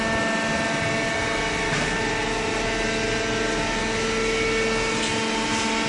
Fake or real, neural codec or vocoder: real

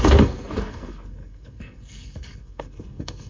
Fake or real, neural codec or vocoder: fake, codec, SNAC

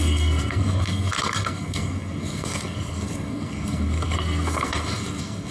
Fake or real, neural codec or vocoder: fake, codec, SNAC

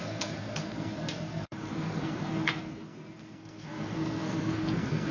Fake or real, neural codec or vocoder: fake, codec, SNAC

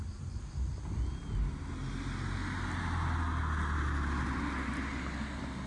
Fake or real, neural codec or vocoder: real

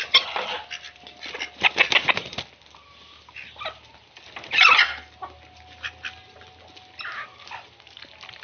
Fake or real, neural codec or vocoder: real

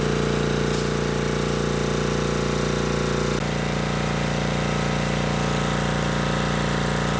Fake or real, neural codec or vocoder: real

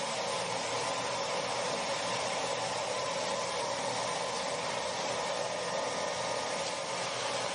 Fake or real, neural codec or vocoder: real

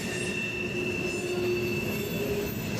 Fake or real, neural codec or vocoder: real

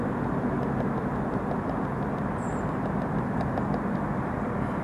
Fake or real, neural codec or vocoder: real